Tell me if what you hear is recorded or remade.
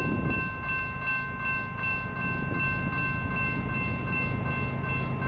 recorded